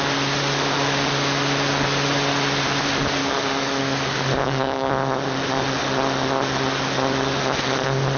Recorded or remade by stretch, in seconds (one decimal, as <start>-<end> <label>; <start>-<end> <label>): 0.0-3.2 recorded; 3.2-3.8 remade; 3.8-4.4 recorded; 4.4-4.9 remade; 4.9-8.2 recorded